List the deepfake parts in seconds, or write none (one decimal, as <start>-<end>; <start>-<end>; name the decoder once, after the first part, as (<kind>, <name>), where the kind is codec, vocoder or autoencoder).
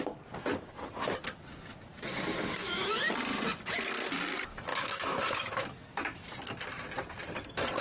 2.6-3.1 (autoencoder, DAC-VAE); 4.7-6.2